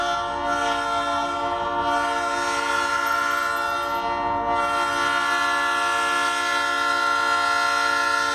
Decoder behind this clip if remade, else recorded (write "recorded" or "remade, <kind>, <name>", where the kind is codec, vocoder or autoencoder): recorded